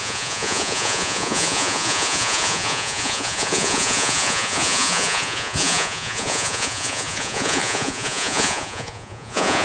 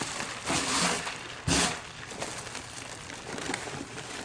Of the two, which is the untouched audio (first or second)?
second